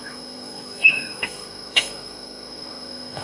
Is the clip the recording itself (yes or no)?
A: no